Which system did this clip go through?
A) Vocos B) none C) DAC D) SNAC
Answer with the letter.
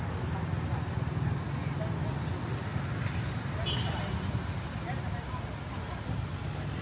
B